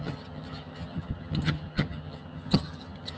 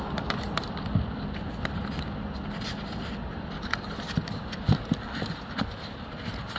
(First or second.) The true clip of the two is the second